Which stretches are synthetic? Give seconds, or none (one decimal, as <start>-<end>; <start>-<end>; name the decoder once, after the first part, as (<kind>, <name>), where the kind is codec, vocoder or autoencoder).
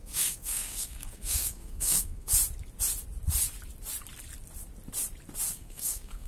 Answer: 0.0-2.3 (codec, SNAC); 5.5-6.3